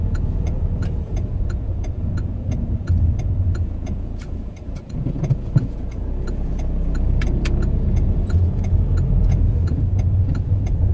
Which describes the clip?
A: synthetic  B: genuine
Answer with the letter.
A